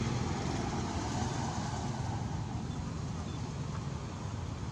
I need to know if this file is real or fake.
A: real